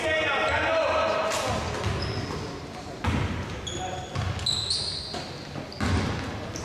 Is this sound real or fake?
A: real